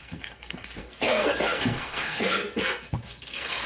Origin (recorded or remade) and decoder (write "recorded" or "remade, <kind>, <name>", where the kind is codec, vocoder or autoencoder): remade, codec, SNAC